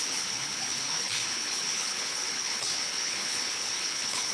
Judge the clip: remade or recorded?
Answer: remade